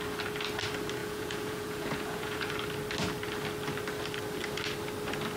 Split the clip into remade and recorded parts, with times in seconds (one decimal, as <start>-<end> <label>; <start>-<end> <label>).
0.0-1.0 recorded; 1.0-2.5 remade; 2.5-5.4 recorded